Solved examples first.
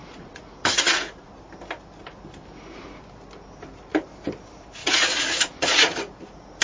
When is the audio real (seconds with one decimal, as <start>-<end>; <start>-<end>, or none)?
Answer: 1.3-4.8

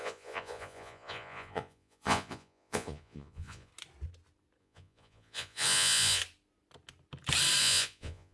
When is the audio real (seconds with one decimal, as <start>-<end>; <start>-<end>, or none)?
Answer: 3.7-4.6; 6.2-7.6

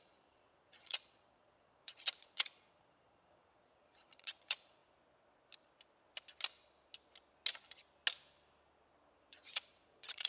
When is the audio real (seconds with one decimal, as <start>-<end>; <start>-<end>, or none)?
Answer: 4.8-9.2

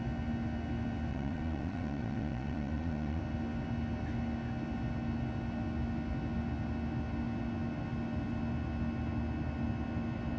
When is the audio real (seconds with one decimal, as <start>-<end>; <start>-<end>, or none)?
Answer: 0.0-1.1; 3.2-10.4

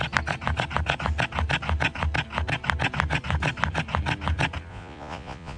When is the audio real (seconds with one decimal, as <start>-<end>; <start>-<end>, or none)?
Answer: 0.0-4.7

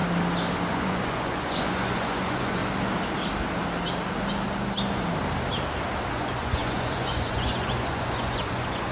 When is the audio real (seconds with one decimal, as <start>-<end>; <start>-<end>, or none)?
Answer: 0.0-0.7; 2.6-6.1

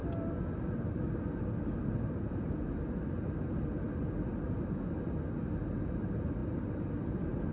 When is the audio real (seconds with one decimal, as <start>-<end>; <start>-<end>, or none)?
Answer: 0.0-7.5